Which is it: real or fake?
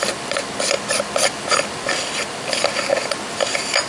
real